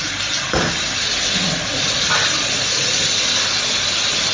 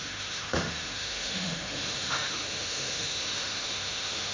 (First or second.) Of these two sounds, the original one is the first